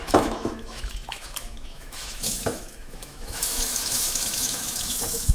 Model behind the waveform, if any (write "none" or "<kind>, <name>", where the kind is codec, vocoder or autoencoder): autoencoder, DAC-VAE